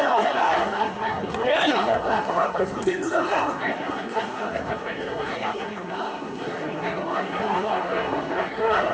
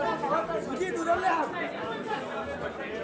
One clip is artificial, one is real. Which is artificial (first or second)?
first